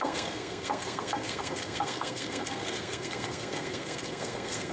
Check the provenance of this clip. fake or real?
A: fake